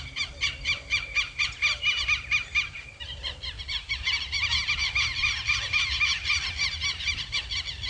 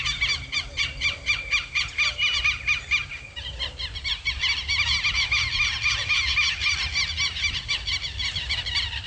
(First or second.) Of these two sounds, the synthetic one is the first